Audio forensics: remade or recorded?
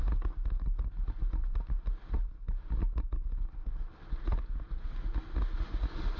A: recorded